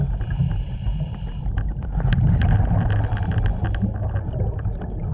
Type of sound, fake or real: real